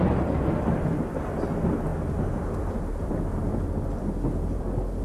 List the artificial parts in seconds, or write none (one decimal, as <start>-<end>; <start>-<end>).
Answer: none